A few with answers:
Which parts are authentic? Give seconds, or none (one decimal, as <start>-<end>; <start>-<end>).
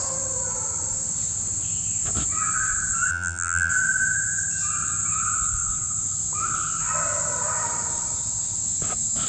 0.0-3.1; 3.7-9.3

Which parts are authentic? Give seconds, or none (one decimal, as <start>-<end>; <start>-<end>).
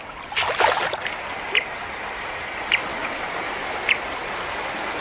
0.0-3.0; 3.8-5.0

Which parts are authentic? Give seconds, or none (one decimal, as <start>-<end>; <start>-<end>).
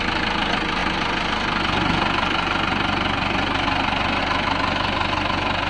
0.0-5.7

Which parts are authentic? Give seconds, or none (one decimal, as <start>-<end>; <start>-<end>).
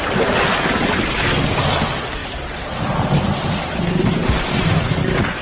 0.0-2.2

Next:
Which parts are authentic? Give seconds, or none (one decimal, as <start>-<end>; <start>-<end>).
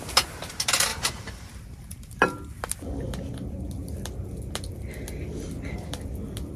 0.0-0.9; 2.6-6.6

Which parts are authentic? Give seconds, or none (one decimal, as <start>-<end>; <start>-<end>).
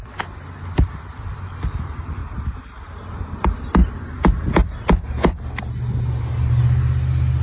0.0-2.2; 3.4-7.4